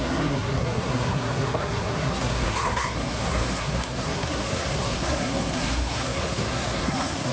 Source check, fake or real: fake